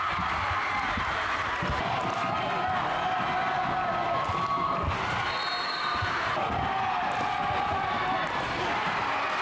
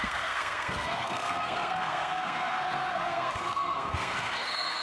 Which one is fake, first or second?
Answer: second